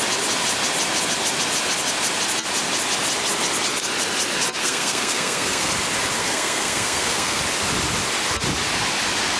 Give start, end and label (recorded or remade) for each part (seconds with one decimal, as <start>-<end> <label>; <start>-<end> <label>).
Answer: 0.0-4.6 recorded; 4.6-5.7 remade; 5.7-6.2 recorded; 6.2-7.4 remade; 7.4-9.4 recorded